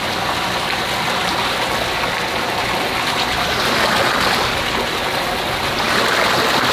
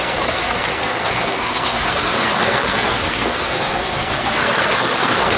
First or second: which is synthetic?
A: second